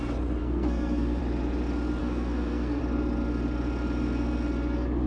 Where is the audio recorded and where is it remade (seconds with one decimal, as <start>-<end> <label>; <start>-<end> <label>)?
0.0-0.4 recorded; 0.4-1.2 remade; 1.2-2.0 recorded; 2.0-2.8 remade; 2.8-5.1 recorded